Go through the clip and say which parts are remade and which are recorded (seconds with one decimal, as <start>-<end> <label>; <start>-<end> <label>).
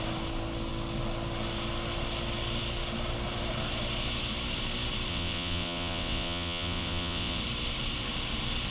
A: 0.0-5.1 recorded; 5.1-7.4 remade; 7.4-8.7 recorded